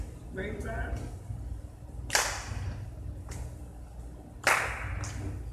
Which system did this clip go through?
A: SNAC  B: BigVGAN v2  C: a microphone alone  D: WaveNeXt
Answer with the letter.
C